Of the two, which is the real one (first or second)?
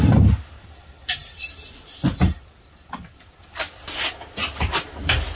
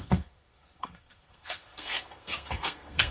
first